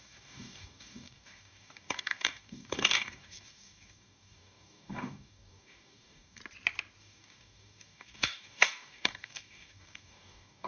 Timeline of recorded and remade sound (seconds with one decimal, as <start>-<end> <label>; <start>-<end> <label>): 0.0-6.4 remade; 6.4-7.0 recorded; 7.0-10.7 remade